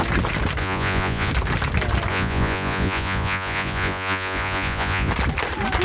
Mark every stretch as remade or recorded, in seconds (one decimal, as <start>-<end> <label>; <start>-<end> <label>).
0.0-0.6 recorded; 0.6-1.3 remade; 1.3-2.1 recorded; 2.1-5.1 remade; 5.1-5.8 recorded